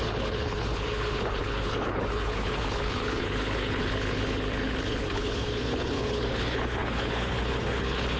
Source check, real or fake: fake